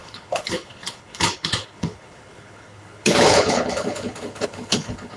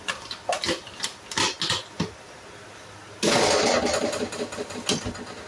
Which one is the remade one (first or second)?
first